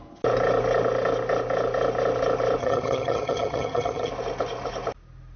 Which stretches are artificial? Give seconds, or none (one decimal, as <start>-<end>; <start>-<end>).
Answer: 2.6-4.1